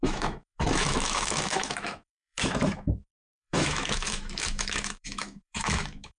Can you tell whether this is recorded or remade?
remade